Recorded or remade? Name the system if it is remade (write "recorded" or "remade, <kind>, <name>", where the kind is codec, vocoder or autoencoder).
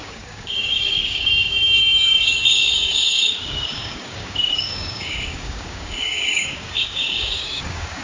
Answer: remade, codec, DAC